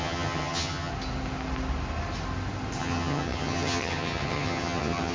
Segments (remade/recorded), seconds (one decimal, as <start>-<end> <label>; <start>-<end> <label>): 0.0-0.9 remade; 0.9-2.8 recorded; 2.8-5.1 remade